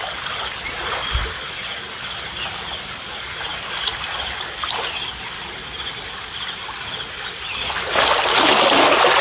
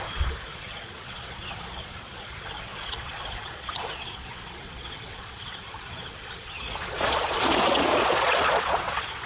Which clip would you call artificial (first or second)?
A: second